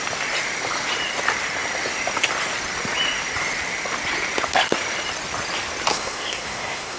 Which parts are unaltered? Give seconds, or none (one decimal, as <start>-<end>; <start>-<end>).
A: 0.0-5.9